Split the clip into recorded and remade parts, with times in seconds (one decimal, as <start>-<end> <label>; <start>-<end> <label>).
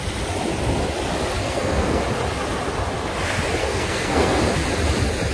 0.0-1.4 recorded; 1.4-2.0 remade; 2.0-3.6 recorded; 3.6-4.4 remade; 4.4-5.3 recorded